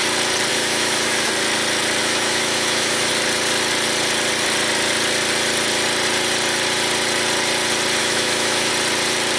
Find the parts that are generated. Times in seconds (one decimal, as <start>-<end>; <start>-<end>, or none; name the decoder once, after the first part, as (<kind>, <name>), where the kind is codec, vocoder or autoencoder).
0.5-1.3 (autoencoder, DAC-VAE); 2.0-3.1; 8.0-8.7